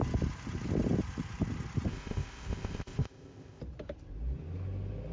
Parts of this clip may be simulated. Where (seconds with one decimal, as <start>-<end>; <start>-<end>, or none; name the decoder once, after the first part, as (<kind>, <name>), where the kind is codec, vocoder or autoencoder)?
1.9-3.6 (codec, ZipCodec)